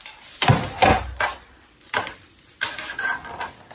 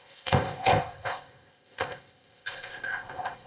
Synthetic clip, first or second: second